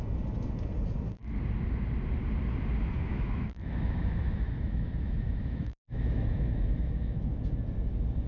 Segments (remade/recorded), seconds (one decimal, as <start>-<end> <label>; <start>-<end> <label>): 0.0-3.1 recorded; 3.1-7.3 remade; 7.3-8.3 recorded